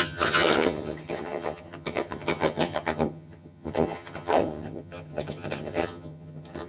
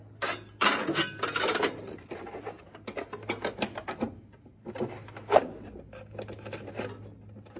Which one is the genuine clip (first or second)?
second